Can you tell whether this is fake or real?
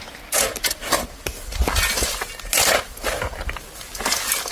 real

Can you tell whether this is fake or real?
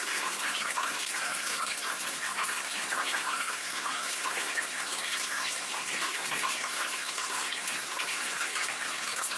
fake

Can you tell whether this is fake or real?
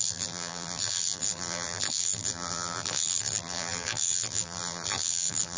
fake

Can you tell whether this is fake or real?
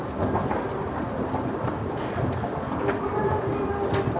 real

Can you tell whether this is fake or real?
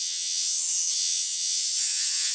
fake